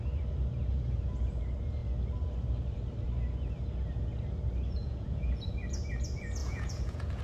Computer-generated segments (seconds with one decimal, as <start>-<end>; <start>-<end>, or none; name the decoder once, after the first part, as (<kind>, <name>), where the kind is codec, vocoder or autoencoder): 0.7-1.4 (vocoder, Vocos); 4.8-5.5; 6.4-7.2